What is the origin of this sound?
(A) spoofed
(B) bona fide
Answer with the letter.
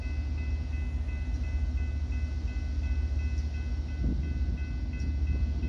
B